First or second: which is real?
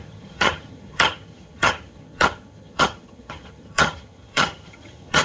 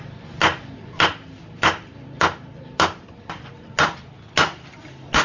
second